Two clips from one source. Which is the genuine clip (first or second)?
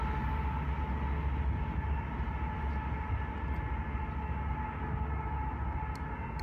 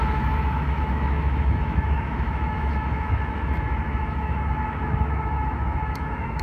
first